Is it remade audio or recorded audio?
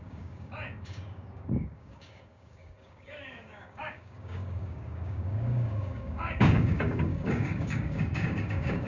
remade